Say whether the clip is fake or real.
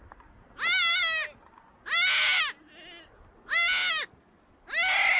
real